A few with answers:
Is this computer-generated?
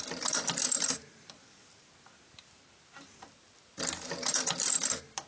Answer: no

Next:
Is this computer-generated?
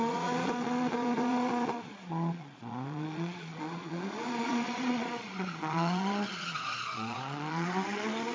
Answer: yes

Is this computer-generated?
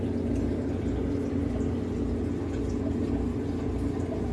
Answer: no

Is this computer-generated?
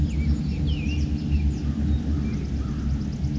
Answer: no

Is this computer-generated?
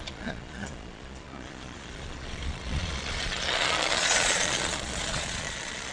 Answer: yes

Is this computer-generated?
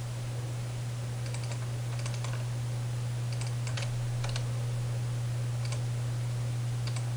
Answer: no